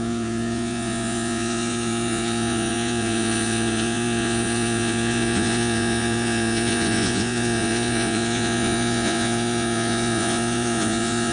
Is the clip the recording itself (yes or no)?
no